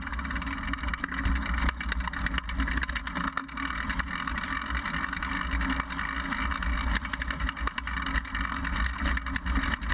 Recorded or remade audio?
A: recorded